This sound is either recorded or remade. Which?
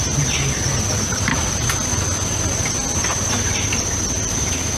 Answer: recorded